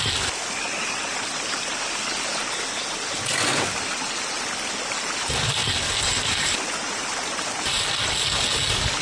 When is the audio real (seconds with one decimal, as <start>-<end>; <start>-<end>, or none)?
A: 0.0-9.0